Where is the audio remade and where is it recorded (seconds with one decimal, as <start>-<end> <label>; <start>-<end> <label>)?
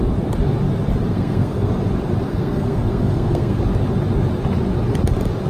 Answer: 0.0-1.1 recorded; 1.1-1.7 remade; 1.7-2.3 recorded; 2.3-3.6 remade; 3.6-5.5 recorded